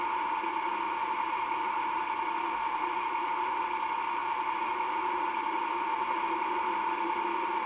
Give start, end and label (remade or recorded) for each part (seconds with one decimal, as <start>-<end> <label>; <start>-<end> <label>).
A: 0.0-0.5 remade; 0.5-1.0 recorded; 1.0-4.2 remade; 4.2-5.1 recorded; 5.1-7.7 remade